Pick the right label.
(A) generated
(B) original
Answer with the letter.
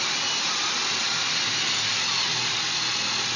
B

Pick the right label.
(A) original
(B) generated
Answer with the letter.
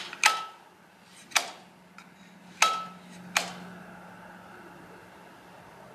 A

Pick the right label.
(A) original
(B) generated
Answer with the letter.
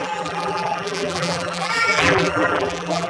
B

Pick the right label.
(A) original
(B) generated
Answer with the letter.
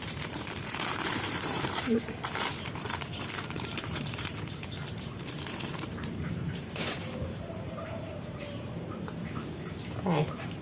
B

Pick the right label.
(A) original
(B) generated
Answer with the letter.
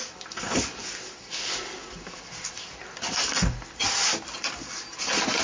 A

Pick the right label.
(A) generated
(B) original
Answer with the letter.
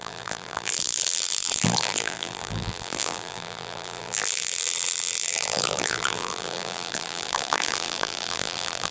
A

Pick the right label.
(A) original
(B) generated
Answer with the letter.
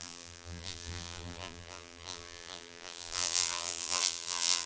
B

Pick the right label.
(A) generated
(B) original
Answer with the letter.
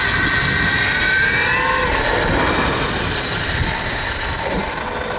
B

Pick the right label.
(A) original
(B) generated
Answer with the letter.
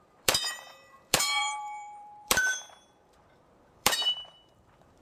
B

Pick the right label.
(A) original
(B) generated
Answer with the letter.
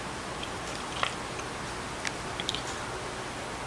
A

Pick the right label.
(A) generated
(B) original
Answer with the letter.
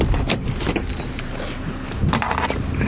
B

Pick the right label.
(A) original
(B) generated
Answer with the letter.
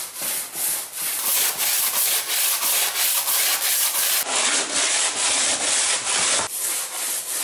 B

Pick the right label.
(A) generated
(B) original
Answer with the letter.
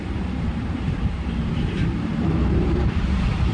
A